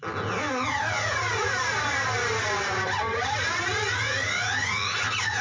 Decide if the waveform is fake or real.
real